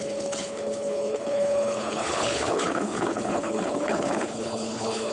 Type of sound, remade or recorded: remade